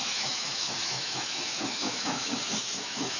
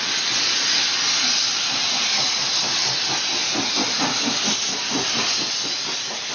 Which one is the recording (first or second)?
second